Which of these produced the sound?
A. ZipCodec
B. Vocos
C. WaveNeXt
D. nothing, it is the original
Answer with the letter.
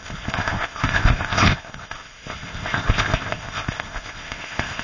A